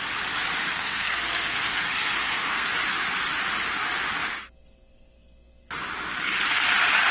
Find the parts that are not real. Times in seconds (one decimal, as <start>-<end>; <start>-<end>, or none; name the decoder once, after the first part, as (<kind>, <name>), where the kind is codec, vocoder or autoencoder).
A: 0.6-2.7 (codec, SNAC)